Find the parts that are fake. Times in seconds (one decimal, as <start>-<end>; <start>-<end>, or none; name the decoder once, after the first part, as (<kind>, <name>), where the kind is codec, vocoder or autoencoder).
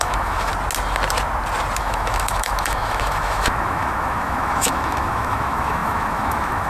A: 0.0-0.5 (autoencoder, DAC-VAE); 1.8-6.7